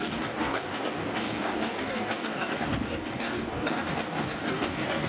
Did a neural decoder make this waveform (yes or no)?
yes